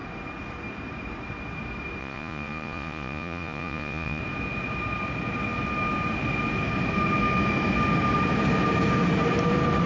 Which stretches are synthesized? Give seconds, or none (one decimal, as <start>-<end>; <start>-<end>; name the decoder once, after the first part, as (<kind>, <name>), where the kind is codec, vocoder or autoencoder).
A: 2.0-4.2 (vocoder, Vocos)